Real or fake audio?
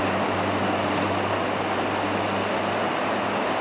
real